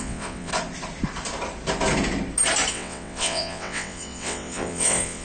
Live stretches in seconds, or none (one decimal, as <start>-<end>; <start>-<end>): 0.5-2.7